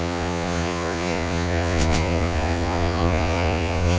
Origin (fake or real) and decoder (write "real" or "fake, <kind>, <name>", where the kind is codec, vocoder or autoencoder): fake, vocoder, Vocos